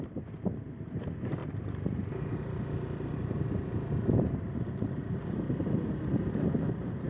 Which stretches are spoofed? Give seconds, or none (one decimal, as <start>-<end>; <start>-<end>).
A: none